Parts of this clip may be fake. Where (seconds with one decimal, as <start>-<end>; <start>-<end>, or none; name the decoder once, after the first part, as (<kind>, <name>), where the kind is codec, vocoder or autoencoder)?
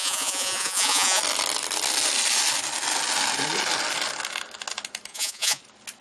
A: 0.0-1.2 (vocoder, Vocos); 5.1-5.6